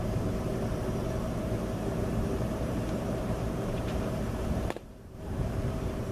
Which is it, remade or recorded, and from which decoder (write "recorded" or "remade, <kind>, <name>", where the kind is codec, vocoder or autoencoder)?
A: remade, vocoder, BigVGAN v2